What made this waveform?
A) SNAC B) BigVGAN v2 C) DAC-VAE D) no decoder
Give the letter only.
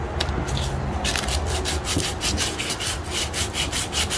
D